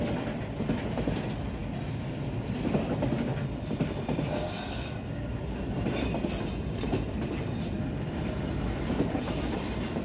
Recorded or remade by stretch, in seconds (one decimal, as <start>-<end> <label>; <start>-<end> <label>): 0.0-10.0 recorded